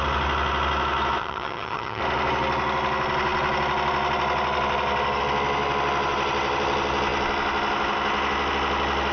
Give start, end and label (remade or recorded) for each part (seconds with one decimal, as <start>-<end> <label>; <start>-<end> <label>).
0.0-1.2 recorded; 1.2-2.0 remade; 2.0-9.1 recorded